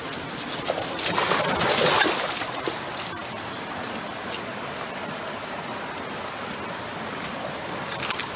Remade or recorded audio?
recorded